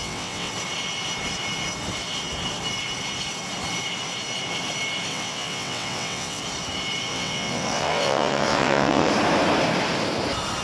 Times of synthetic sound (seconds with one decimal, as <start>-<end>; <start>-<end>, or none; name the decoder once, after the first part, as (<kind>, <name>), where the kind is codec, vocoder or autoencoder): 0.0-0.5 (vocoder, WaveNeXt); 5.1-6.4; 7.1-9.1